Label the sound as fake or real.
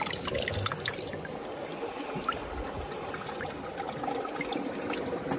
real